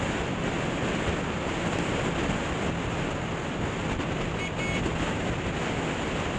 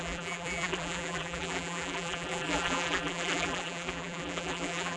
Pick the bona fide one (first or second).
first